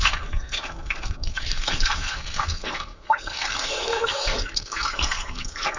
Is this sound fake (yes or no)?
yes